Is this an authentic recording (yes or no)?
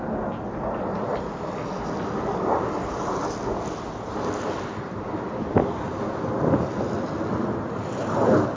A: yes